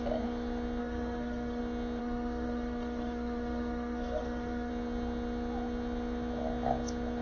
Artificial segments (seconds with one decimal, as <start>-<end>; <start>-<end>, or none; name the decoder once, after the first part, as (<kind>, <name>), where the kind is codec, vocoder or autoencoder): 0.8-1.6 (codec, SNAC); 2.0-4.7